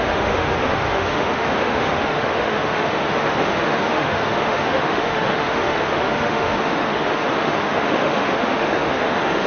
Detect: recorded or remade remade